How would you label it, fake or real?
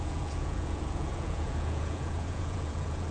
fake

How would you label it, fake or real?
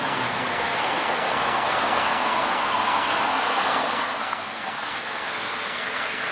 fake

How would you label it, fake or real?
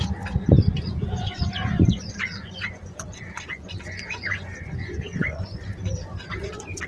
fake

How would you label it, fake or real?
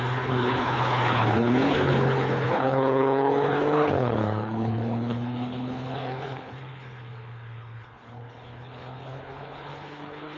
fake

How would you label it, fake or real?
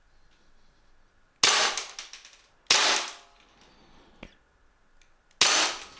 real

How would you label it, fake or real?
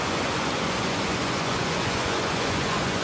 fake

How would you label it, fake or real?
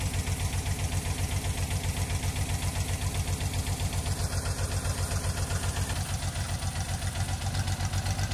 real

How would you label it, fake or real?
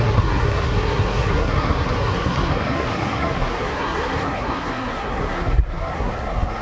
fake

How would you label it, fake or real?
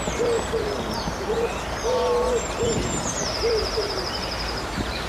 fake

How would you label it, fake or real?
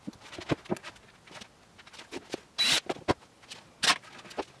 real